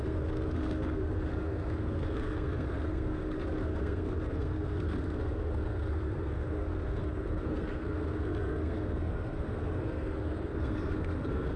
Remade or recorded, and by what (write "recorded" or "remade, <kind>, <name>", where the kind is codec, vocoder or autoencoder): remade, codec, SNAC